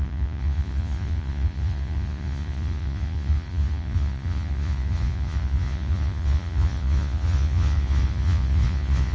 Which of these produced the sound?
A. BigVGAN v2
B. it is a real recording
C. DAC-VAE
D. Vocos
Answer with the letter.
D